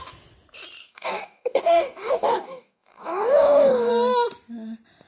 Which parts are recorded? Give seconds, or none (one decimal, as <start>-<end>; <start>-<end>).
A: 0.0-0.8; 3.9-5.1